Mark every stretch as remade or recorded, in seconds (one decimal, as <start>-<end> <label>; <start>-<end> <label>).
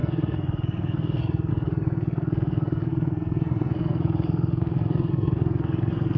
0.0-6.2 remade